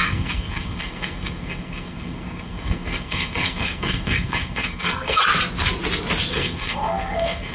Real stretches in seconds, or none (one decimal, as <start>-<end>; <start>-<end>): 5.2-6.3